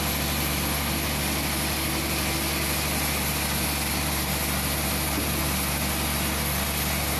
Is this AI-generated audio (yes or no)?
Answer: no